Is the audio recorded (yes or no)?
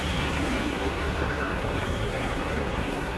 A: no